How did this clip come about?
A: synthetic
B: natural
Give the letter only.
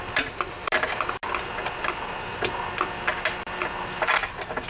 B